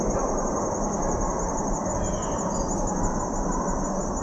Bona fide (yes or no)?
yes